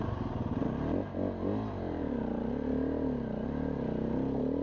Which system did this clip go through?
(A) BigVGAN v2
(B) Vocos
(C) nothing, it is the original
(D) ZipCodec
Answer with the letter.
C